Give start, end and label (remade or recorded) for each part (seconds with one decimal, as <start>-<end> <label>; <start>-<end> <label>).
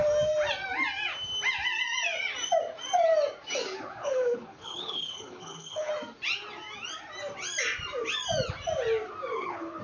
0.0-4.0 recorded; 4.0-5.9 remade; 5.9-9.3 recorded; 9.3-9.8 remade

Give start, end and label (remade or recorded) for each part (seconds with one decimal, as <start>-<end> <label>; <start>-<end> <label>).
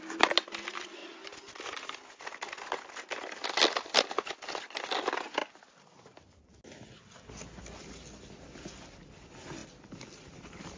0.0-10.8 recorded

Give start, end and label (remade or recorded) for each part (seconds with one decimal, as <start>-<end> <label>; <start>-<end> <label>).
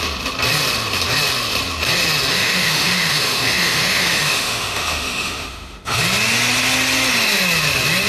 0.0-2.3 recorded; 2.3-6.0 remade; 6.0-8.1 recorded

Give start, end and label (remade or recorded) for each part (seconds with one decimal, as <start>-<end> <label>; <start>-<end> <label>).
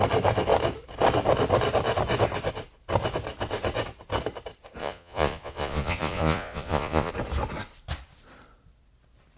0.0-4.8 recorded; 4.8-7.1 remade; 7.1-9.4 recorded